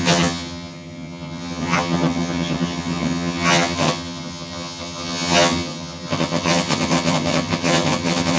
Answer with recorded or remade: remade